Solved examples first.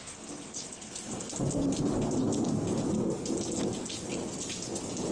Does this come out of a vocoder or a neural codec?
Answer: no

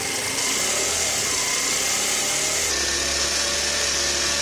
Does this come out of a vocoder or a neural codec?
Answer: no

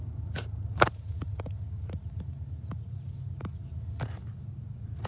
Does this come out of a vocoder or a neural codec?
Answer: no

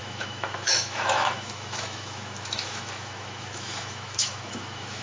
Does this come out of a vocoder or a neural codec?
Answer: yes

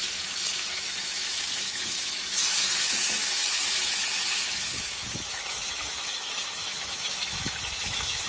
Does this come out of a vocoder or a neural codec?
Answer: yes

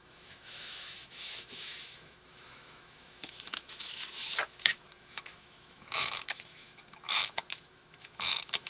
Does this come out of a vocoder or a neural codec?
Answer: yes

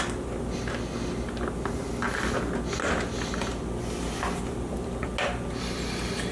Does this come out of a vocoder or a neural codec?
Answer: no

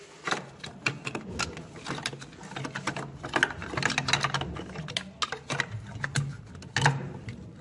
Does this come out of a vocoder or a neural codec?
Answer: no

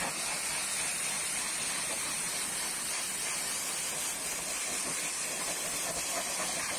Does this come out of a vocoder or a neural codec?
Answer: no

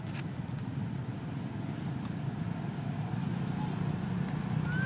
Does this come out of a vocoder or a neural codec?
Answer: no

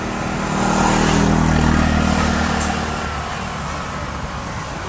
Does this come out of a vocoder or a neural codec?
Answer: no